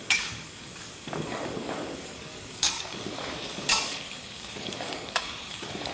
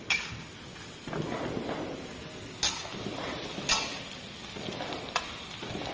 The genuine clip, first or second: second